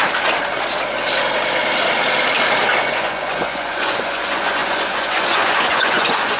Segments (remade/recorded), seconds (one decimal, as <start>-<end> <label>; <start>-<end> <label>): 0.0-2.8 recorded; 2.8-6.4 remade